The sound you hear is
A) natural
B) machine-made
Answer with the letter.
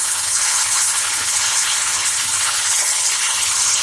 B